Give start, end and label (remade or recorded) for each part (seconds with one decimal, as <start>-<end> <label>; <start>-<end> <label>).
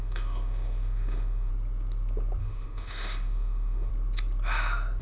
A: 0.0-1.5 remade; 1.5-2.4 recorded; 2.4-3.9 remade; 3.9-5.0 recorded